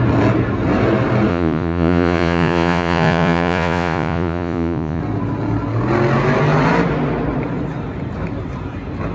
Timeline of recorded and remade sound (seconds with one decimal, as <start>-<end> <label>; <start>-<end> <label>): 0.0-1.3 recorded; 1.3-5.0 remade; 5.0-9.1 recorded

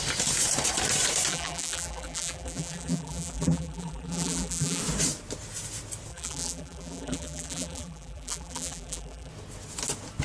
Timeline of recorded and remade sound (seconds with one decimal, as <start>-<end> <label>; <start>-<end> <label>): 0.0-1.3 recorded; 1.3-4.8 remade; 4.8-6.1 recorded; 6.1-9.3 remade; 9.3-10.2 recorded

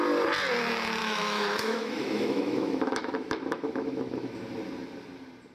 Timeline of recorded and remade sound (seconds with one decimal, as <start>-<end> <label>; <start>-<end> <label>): 0.0-1.0 recorded; 1.0-4.3 remade; 4.3-5.5 recorded

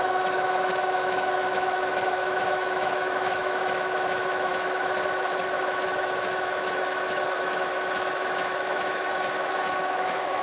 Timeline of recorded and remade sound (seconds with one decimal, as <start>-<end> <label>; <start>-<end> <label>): 0.0-10.4 remade

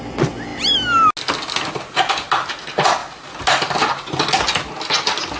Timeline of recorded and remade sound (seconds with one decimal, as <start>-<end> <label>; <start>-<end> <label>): 0.0-5.4 recorded

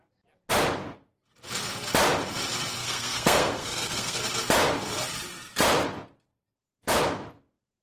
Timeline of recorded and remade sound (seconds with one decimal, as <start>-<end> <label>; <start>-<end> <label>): 0.0-2.8 recorded; 2.8-4.2 remade; 4.2-7.8 recorded

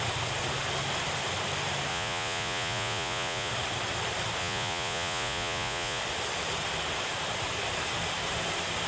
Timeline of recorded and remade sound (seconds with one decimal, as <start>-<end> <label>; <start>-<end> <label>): 0.0-1.9 recorded; 1.9-3.5 remade; 3.5-4.4 recorded; 4.4-6.0 remade; 6.0-8.9 recorded